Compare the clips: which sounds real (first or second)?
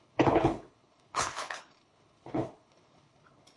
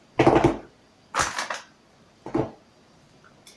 second